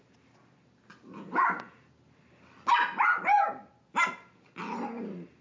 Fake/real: real